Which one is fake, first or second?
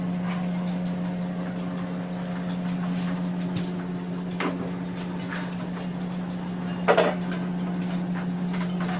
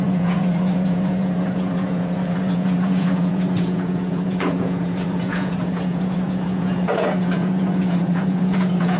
second